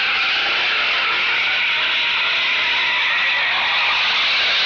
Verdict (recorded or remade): recorded